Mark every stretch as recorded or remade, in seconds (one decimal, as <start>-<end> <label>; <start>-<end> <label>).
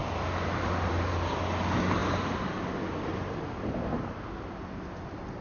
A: 0.0-5.4 recorded